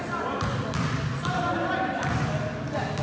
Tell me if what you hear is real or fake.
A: real